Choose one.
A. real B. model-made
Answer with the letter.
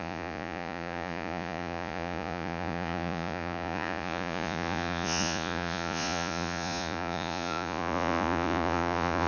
B